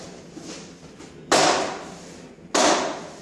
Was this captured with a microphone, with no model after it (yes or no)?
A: yes